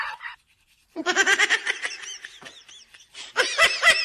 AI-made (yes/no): yes